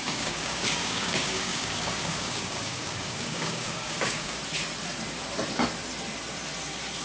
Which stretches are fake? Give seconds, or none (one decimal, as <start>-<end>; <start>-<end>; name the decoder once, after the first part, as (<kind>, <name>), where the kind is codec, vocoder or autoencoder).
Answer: 0.0-4.4 (codec, DAC)